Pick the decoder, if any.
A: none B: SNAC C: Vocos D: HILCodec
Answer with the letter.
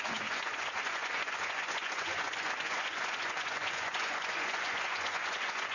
C